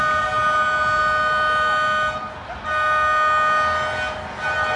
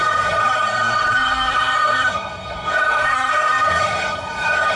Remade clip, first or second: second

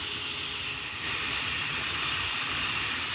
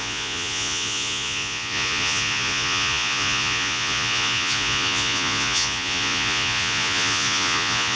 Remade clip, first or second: second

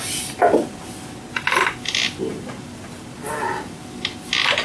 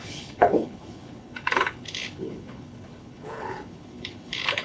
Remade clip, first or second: second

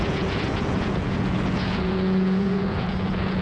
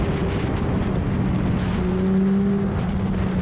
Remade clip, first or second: first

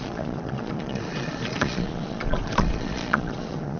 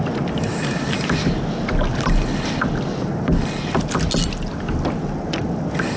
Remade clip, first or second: first